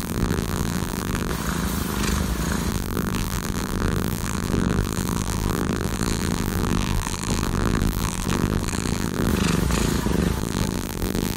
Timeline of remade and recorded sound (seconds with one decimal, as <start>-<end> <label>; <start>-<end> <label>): 0.0-1.3 remade; 1.3-2.7 recorded; 2.7-9.3 remade; 9.3-10.4 recorded; 10.4-11.4 remade